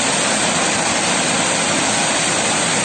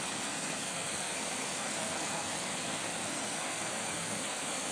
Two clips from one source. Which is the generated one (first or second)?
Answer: second